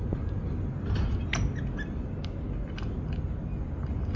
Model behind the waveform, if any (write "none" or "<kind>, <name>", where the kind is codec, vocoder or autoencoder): none